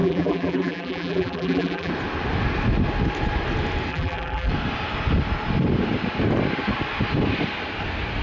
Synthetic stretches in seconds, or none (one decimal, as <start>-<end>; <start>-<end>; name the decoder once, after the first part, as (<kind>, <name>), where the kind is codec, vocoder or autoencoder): 0.0-1.9 (vocoder, BigVGAN v2); 3.9-4.5